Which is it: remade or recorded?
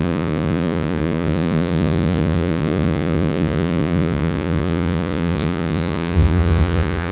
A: remade